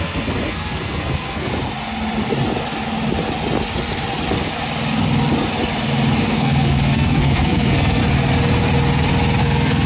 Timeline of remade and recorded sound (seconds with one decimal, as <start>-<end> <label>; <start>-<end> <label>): 0.0-1.5 remade; 1.5-6.2 recorded; 6.2-8.0 remade; 8.0-9.4 recorded; 9.4-9.9 remade